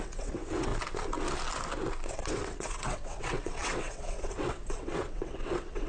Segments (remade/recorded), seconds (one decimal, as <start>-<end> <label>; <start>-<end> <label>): 0.0-0.7 remade; 0.7-2.1 recorded; 2.1-5.9 remade